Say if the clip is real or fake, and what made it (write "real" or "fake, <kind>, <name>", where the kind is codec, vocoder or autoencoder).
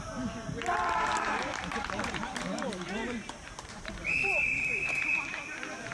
fake, vocoder, BigVGAN v2